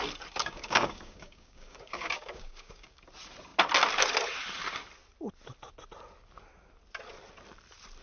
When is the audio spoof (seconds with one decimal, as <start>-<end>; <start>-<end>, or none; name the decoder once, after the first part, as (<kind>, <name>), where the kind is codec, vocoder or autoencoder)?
0.4-3.0 (codec, DAC)